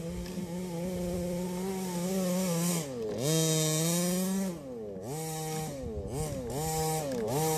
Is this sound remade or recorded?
recorded